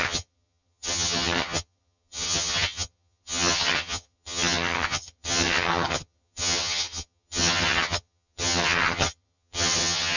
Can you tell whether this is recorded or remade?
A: remade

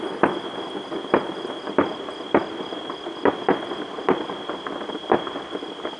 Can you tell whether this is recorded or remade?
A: recorded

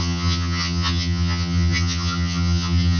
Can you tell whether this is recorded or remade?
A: remade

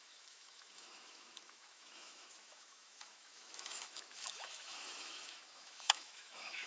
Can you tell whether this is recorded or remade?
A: remade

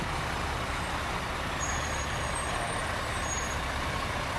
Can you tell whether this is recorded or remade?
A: remade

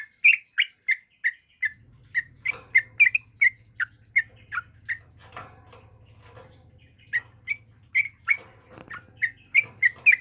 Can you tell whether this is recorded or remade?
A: recorded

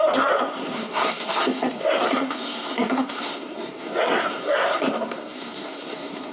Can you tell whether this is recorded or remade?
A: remade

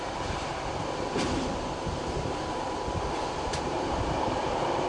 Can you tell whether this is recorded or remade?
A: remade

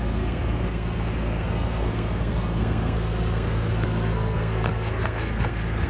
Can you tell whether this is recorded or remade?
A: remade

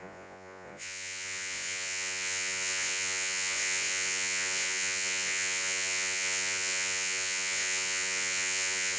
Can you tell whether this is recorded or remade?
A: remade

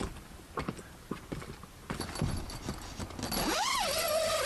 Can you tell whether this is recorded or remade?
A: recorded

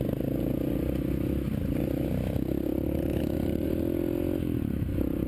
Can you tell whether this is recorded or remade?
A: recorded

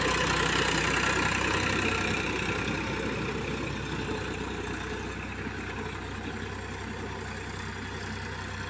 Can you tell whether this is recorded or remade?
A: recorded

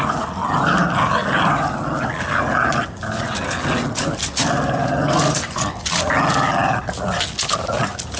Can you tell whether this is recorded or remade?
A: recorded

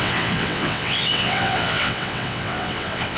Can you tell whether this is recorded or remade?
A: remade